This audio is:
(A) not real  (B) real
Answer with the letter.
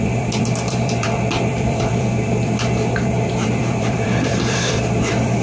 A